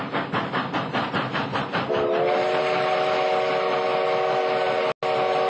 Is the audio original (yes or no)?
yes